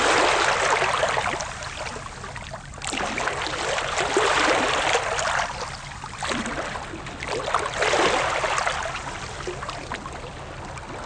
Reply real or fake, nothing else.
real